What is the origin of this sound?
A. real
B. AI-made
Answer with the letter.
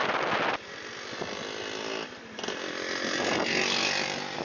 A